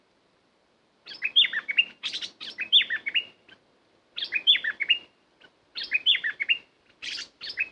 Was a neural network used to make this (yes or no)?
yes